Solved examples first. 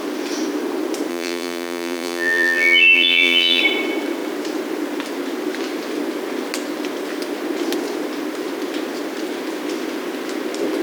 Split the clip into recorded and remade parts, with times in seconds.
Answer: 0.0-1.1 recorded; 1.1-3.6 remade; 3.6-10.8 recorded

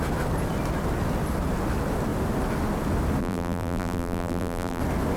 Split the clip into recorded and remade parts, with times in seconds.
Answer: 0.0-3.2 recorded; 3.2-4.8 remade; 4.8-5.2 recorded

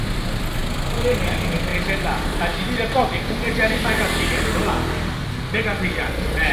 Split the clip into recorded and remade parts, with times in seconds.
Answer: 0.0-6.5 recorded

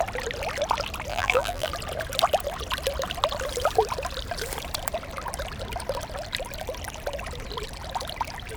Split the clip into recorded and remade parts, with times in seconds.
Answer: 0.0-1.1 recorded; 1.1-1.7 remade; 1.7-8.6 recorded

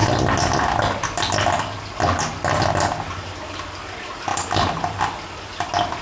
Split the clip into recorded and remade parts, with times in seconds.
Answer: 0.0-4.3 recorded; 4.3-5.0 remade; 5.0-6.0 recorded